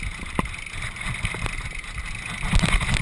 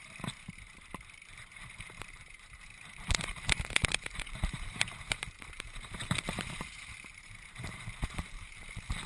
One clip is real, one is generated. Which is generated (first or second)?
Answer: second